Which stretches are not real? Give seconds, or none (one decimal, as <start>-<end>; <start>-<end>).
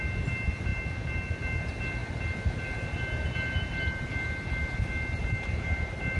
none